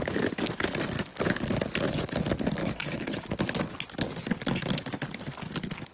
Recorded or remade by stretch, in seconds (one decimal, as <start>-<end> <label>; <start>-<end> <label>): 0.0-2.6 recorded; 2.6-3.3 remade; 3.3-5.9 recorded